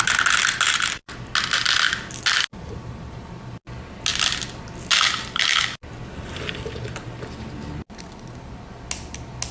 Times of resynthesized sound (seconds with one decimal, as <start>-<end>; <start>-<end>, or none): none